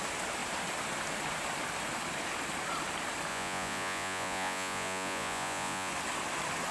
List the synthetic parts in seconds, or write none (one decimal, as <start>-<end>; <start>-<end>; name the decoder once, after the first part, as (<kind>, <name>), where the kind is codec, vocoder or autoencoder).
3.3-5.9 (vocoder, Vocos)